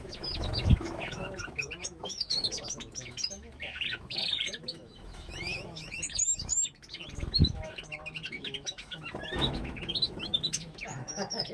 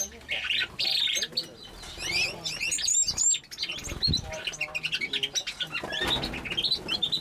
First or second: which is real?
second